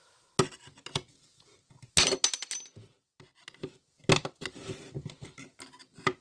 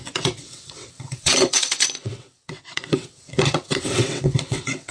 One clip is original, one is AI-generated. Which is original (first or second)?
first